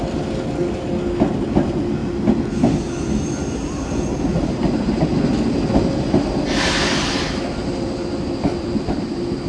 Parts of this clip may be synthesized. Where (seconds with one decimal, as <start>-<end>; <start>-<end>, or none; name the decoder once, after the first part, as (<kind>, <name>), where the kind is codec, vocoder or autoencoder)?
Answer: 4.3-5.1 (vocoder, BigVGAN v2)